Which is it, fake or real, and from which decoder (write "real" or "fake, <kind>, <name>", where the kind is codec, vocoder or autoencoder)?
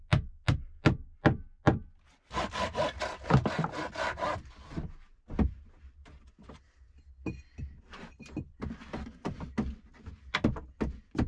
real